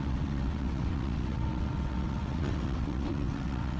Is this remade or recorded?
remade